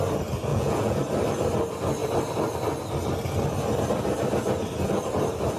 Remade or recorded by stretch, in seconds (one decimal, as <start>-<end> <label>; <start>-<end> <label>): 0.0-0.5 recorded; 0.5-1.0 remade; 1.0-5.6 recorded